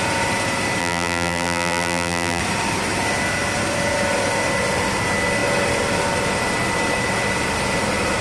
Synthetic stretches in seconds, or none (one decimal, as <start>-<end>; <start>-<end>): 0.8-2.4